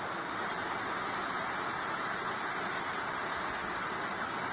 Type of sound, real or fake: real